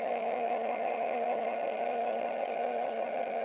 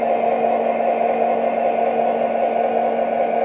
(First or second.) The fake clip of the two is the first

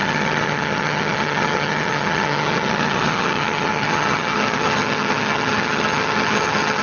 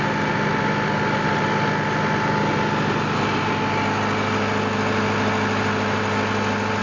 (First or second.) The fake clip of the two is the first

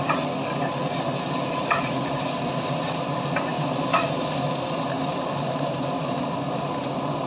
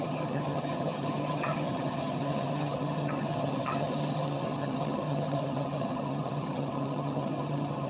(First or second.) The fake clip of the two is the second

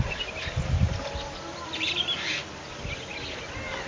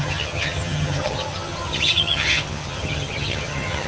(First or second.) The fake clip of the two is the second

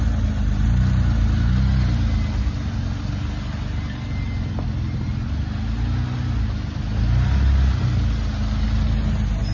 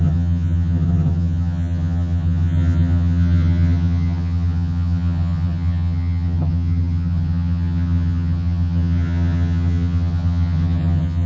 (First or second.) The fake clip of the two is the second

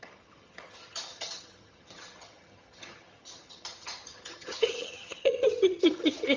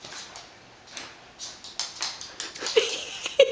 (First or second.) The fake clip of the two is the first